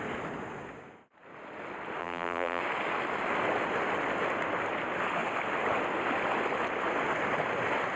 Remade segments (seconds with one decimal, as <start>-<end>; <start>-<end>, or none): 2.0-2.6